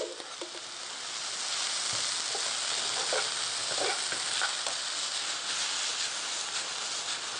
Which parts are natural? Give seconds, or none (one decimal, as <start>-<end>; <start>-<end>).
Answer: 0.0-7.4